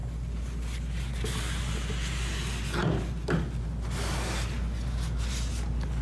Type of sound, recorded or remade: recorded